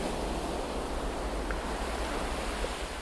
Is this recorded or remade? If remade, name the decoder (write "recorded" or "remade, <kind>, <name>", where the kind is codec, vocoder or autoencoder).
recorded